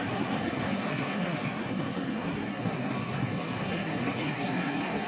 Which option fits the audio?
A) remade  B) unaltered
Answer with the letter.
A